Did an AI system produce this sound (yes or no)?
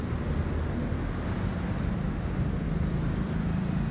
no